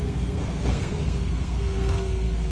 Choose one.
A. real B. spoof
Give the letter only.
B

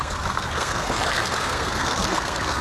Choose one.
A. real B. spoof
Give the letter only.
B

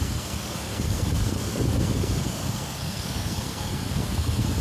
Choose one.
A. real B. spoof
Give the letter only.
B